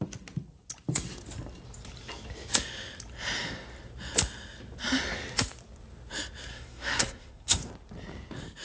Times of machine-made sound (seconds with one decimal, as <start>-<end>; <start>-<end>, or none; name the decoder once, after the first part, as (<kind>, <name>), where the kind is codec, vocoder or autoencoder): 6.5-7.7 (codec, SNAC)